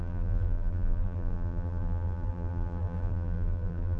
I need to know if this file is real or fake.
fake